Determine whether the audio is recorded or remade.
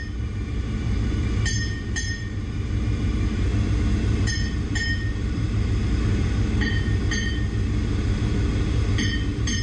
remade